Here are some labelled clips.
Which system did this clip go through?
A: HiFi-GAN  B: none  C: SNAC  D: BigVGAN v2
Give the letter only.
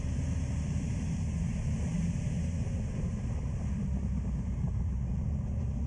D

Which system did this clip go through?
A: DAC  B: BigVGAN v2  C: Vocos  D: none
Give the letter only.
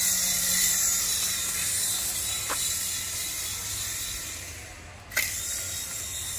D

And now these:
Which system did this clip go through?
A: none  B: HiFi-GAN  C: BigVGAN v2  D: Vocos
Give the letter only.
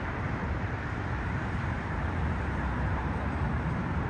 C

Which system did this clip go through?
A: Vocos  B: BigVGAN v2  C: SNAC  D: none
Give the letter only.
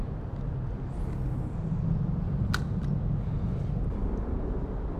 D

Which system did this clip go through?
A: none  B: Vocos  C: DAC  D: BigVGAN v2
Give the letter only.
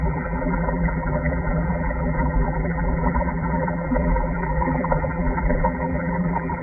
D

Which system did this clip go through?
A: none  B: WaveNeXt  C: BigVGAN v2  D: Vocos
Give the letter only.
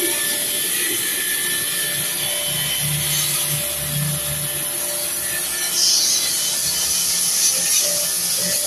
A